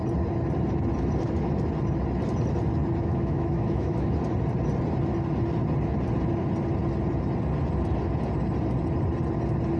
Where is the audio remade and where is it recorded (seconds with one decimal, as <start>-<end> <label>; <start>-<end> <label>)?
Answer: 0.0-3.0 recorded; 3.0-4.1 remade; 4.1-9.8 recorded